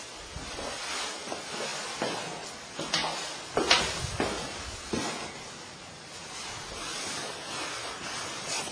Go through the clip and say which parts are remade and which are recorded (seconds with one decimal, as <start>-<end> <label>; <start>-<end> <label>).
0.0-8.7 recorded